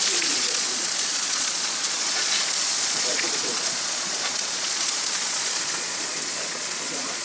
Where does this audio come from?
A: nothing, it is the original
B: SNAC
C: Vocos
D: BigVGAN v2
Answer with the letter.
C